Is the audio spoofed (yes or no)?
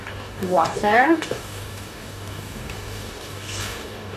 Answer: yes